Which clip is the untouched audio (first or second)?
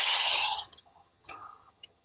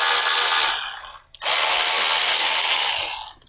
second